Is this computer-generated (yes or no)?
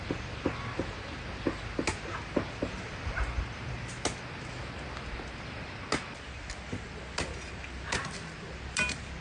no